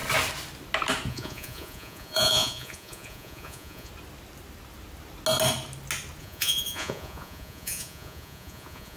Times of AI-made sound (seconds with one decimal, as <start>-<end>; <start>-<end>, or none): 1.1-3.9; 6.2-9.0